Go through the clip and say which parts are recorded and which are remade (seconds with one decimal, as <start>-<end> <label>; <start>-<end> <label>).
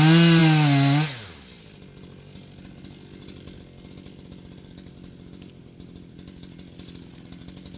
0.0-7.8 recorded